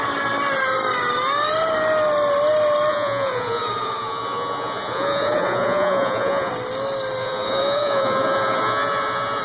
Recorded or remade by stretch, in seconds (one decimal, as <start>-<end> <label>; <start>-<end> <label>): 0.0-2.9 recorded; 2.9-6.5 remade; 6.5-7.2 recorded; 7.2-9.4 remade